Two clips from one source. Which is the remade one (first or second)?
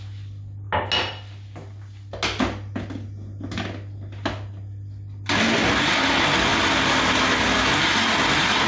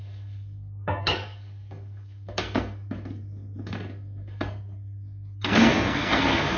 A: second